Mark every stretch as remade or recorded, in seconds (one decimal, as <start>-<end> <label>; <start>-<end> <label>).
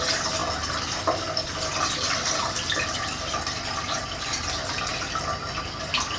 0.0-6.2 recorded